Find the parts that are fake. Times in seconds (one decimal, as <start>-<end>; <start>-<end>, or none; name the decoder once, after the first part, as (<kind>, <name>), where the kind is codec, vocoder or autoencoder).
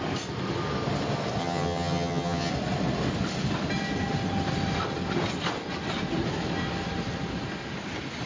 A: 1.4-2.5 (vocoder, HiFi-GAN)